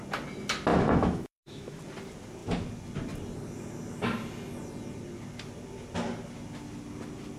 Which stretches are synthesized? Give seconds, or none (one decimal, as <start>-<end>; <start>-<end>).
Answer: 0.7-1.8